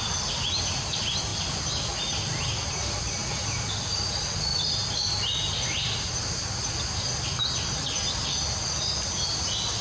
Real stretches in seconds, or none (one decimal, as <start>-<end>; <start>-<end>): 0.0-9.8